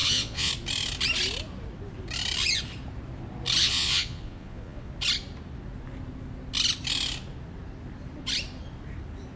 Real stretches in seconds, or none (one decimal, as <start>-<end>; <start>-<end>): 0.5-3.6; 4.9-9.4